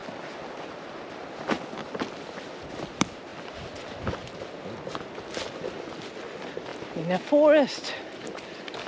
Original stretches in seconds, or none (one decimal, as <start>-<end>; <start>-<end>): 0.0-8.9